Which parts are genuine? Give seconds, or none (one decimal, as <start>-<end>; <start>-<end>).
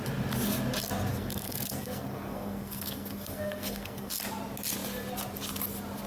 0.0-1.1; 4.1-6.1